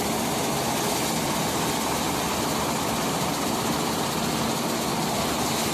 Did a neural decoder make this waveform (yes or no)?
no